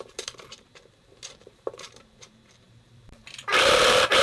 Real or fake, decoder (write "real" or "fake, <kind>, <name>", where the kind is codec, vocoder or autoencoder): fake, vocoder, BigVGAN v2